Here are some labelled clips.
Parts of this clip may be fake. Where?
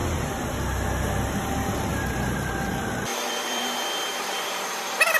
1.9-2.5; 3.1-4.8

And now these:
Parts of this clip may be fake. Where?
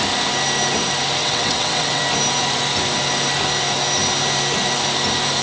1.2-2.0